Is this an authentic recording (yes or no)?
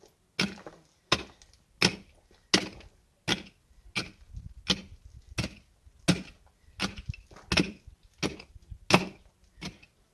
yes